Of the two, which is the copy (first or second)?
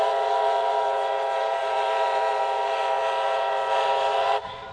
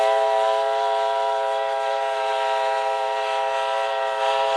first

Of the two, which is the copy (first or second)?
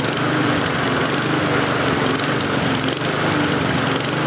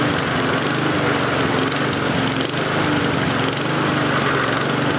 first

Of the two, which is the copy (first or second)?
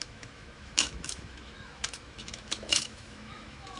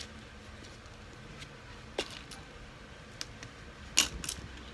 first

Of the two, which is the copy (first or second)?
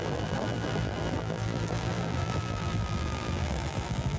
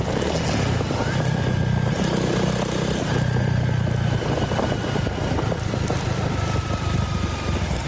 first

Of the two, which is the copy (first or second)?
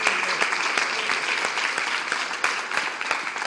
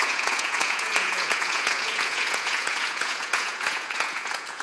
second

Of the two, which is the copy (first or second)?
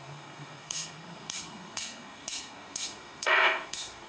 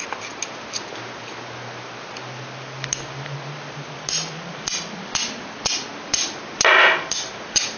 first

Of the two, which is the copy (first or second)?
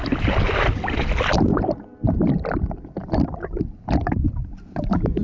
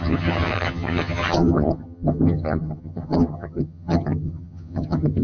second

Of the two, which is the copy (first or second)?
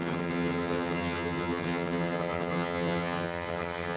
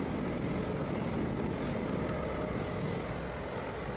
first